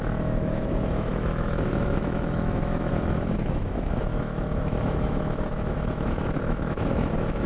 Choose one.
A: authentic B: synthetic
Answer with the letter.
B